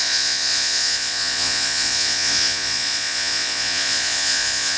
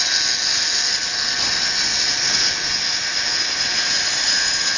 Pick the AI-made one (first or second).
first